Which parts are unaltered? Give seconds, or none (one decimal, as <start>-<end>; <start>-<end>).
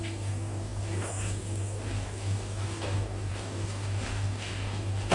none